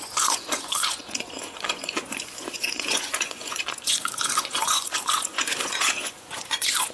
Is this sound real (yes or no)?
no